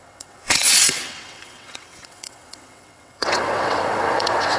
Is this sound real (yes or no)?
no